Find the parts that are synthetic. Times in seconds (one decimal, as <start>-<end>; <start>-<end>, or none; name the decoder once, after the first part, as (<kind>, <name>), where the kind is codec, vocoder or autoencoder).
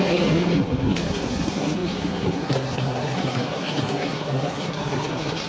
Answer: 0.0-5.5 (codec, SNAC)